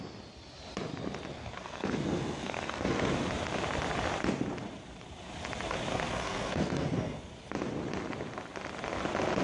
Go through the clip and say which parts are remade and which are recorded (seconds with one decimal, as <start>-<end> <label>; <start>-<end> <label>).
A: 0.0-1.3 recorded; 1.3-3.1 remade; 3.1-5.9 recorded; 5.9-7.2 remade; 7.2-9.4 recorded